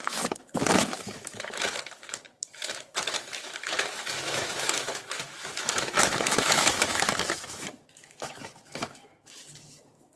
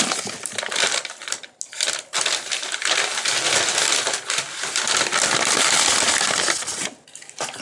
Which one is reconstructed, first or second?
first